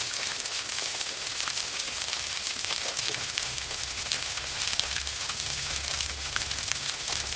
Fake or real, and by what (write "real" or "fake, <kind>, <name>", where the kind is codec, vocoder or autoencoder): fake, autoencoder, DAC-VAE